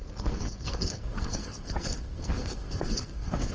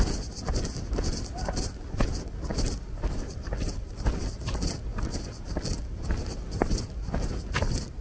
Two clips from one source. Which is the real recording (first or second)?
second